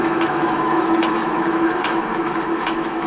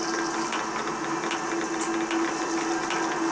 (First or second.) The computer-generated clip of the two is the first